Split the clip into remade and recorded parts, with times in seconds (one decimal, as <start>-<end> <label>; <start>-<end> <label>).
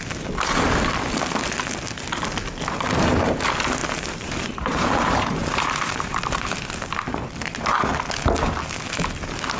0.0-3.8 recorded; 3.8-6.6 remade; 6.6-9.6 recorded